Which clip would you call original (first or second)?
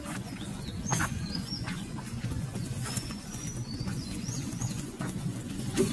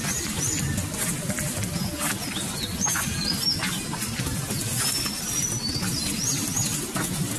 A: second